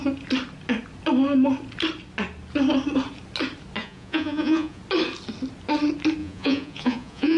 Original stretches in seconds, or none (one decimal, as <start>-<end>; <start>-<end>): 0.0-3.8; 4.8-6.2